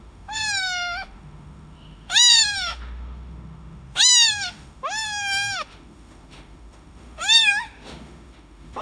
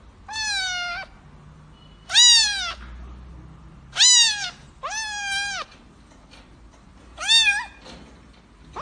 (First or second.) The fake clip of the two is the first